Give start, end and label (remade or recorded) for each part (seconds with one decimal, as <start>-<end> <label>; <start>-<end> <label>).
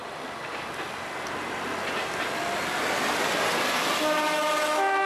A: 0.0-5.1 recorded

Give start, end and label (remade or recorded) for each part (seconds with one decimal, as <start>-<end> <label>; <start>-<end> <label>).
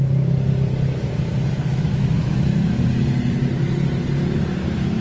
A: 0.0-1.7 recorded; 1.7-2.8 remade; 2.8-5.0 recorded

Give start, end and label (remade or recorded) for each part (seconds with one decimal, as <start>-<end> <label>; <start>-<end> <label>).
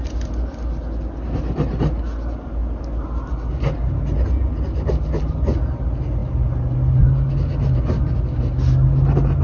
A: 0.0-9.4 recorded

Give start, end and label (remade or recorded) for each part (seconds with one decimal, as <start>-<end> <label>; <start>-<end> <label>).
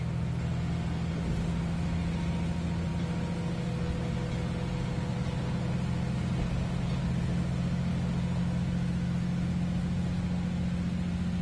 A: 0.0-11.4 recorded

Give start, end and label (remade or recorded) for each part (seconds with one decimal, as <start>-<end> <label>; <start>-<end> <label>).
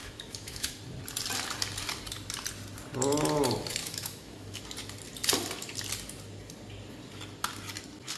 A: 0.0-0.7 remade; 0.7-3.8 recorded; 3.8-4.6 remade; 4.6-8.2 recorded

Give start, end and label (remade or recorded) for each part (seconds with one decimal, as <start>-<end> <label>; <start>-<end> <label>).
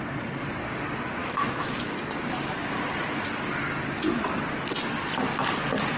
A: 0.0-1.2 recorded; 1.2-1.9 remade; 1.9-6.0 recorded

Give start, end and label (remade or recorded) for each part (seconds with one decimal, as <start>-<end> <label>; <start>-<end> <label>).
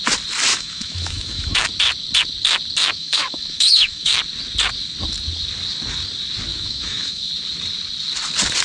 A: 0.0-0.5 recorded; 0.5-1.7 remade; 1.7-2.8 recorded; 2.8-4.2 remade; 4.2-6.5 recorded; 6.5-7.3 remade; 7.3-8.6 recorded